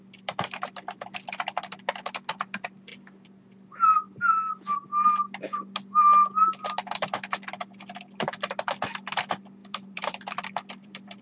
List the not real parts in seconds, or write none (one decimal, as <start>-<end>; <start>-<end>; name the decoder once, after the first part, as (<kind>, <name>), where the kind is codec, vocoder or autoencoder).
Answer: 9.6-11.2 (vocoder, BigVGAN v2)